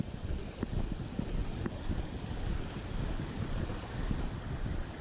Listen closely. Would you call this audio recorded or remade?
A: recorded